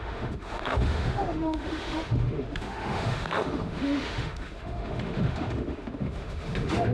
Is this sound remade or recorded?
remade